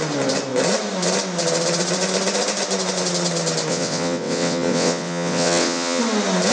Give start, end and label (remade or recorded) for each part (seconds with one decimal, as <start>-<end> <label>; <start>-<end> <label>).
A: 0.0-3.7 recorded; 3.7-6.0 remade; 6.0-6.5 recorded